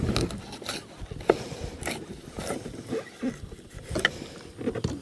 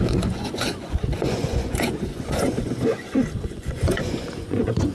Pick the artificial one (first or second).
second